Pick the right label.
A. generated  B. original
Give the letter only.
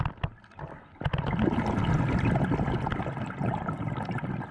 B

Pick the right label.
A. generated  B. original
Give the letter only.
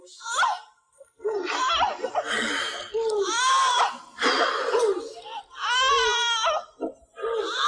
B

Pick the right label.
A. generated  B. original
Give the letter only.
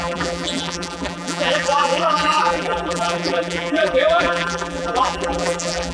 A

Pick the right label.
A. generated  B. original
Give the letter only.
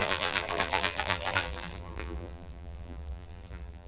A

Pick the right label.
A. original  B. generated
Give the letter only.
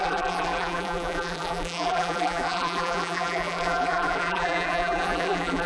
B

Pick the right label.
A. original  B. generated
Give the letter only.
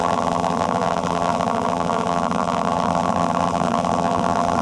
B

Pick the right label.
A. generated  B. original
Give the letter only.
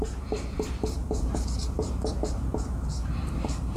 A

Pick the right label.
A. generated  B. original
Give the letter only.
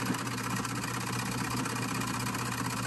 B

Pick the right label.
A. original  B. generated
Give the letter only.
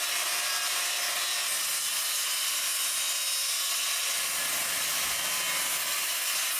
A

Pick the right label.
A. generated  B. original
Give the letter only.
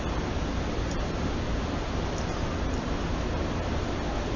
B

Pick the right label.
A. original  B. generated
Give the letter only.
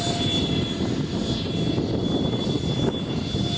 B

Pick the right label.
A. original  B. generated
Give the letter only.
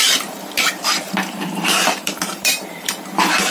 B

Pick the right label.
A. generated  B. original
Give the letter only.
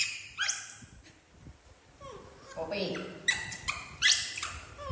A